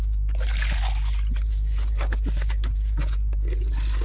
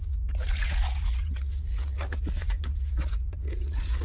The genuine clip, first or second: first